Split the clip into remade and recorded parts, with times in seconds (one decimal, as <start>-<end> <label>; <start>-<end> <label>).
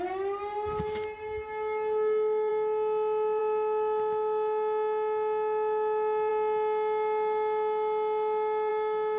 0.0-9.2 recorded